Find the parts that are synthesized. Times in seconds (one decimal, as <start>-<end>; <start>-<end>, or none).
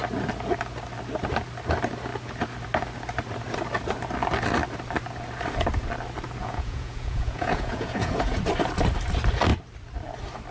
6.4-8.4